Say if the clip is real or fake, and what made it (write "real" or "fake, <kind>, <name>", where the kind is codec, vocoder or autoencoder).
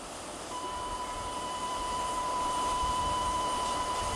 real